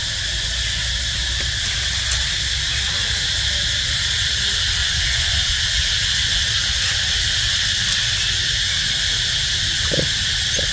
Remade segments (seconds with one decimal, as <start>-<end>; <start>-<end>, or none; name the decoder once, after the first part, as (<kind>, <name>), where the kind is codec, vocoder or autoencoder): 4.8-5.6 (vocoder, Vocos)